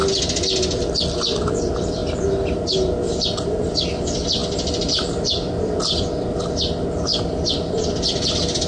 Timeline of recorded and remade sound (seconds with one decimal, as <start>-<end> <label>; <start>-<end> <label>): 0.0-1.1 recorded; 1.1-2.0 remade; 2.0-3.2 recorded; 3.2-8.7 remade